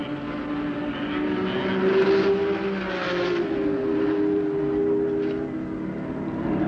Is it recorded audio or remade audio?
recorded